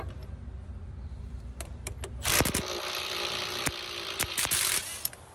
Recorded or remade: remade